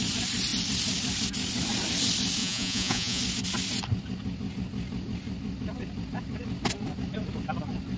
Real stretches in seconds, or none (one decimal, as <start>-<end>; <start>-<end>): 0.0-2.4; 3.2-8.0